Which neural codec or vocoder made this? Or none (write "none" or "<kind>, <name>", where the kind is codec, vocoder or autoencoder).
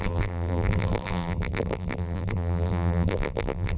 vocoder, BigVGAN v2